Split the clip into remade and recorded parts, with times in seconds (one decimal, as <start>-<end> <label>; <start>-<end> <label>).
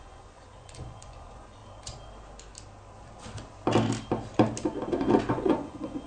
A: 0.0-1.6 remade; 1.6-5.3 recorded; 5.3-6.1 remade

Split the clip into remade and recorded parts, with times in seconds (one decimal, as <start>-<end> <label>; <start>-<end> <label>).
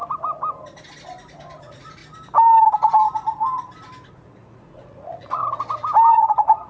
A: 0.0-1.6 recorded; 1.6-2.0 remade; 2.0-4.1 recorded; 4.1-5.4 remade; 5.4-6.1 recorded; 6.1-6.7 remade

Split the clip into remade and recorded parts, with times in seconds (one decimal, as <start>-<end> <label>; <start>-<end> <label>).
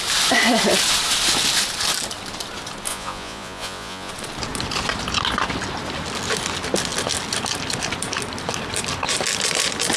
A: 0.0-2.9 recorded; 2.9-4.1 remade; 4.1-10.0 recorded